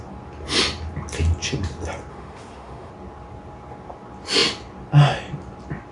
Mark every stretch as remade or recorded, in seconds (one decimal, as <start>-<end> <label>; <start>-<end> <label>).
0.0-2.1 recorded; 2.1-2.9 remade; 2.9-5.9 recorded